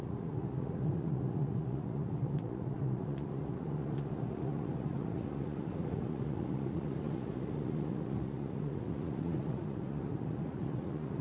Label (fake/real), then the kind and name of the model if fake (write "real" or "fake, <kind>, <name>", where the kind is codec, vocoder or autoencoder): fake, vocoder, Vocos